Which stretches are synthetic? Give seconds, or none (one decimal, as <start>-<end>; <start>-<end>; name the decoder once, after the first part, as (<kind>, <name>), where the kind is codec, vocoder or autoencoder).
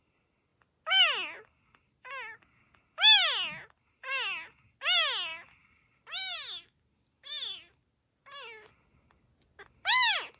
none